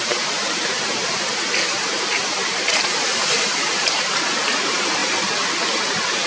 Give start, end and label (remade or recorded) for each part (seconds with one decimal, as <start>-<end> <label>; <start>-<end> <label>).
0.0-5.0 remade; 5.0-6.3 recorded